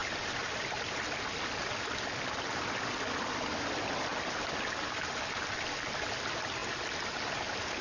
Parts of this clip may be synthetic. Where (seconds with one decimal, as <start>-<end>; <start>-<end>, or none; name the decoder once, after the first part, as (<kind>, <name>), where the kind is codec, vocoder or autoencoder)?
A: none